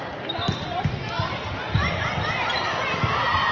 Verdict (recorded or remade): recorded